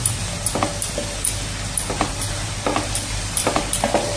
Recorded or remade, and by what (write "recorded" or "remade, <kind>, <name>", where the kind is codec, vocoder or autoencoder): recorded